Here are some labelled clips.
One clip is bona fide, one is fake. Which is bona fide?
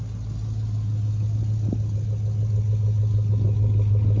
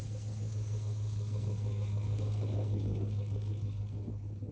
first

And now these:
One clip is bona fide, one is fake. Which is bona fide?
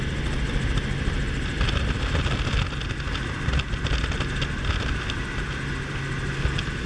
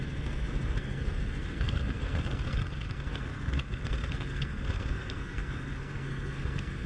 first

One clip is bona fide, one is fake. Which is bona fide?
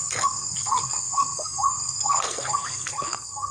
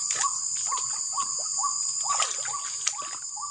second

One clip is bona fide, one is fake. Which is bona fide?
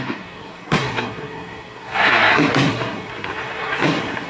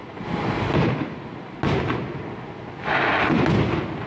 second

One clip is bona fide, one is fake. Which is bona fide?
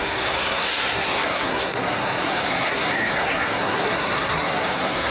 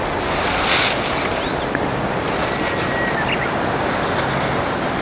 second